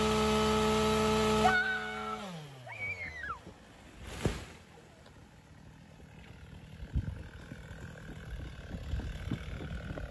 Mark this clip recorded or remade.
recorded